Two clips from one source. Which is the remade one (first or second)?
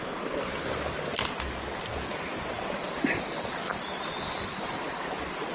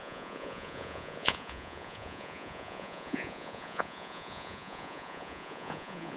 second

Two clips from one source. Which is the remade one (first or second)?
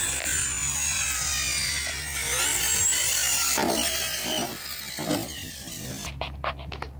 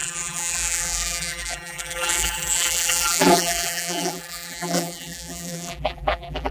second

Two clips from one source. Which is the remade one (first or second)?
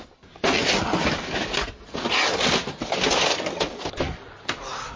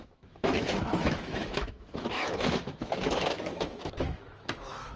second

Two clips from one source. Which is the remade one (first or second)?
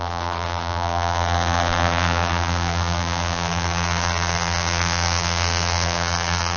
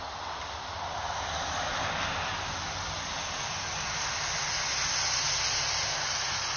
first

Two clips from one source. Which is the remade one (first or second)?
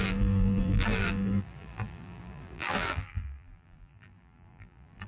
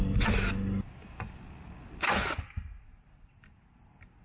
first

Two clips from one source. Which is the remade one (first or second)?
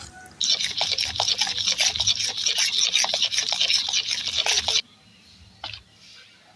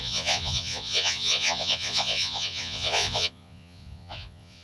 second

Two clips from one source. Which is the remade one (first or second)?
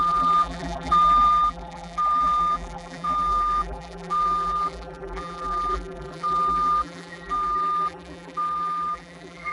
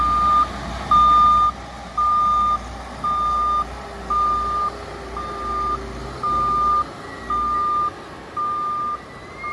first